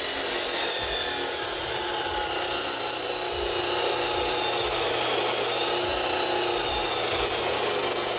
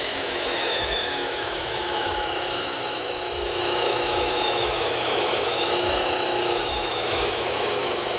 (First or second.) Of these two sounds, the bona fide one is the first